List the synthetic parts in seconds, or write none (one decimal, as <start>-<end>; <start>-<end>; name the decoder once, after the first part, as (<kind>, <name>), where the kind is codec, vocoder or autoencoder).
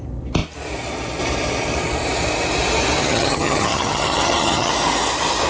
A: 3.0-4.7 (vocoder, HiFi-GAN)